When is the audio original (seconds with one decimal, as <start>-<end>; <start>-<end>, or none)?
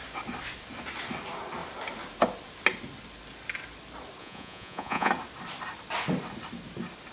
0.0-4.2; 5.1-7.1